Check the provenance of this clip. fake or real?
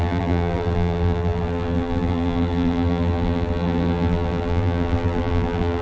fake